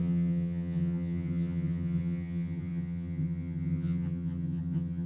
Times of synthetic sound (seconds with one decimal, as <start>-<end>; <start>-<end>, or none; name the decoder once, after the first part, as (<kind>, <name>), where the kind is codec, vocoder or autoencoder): 0.0-5.1 (vocoder, HiFi-GAN)